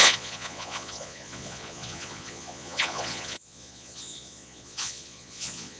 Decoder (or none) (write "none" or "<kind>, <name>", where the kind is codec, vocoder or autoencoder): vocoder, Vocos